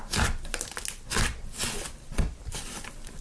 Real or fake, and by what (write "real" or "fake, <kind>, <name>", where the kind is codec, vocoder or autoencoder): real